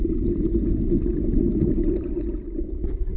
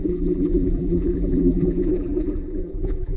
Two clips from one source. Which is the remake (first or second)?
second